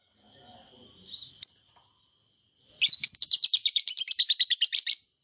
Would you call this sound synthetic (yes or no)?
no